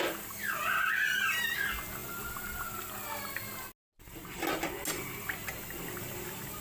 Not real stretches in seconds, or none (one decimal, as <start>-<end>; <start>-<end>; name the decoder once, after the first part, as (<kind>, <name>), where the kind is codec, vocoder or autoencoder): none